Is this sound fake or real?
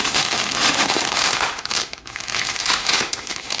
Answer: fake